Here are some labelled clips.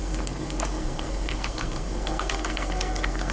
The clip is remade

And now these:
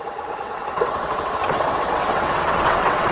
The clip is remade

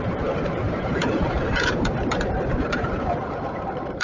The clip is remade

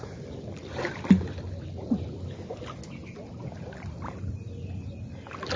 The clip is recorded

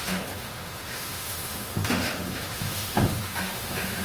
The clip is remade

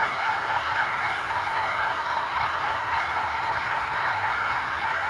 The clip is remade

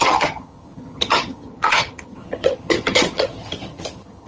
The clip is remade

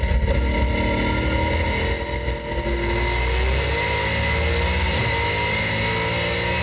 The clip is recorded